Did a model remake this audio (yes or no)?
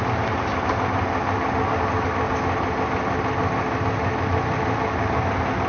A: no